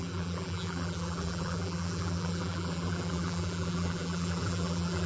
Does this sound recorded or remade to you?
remade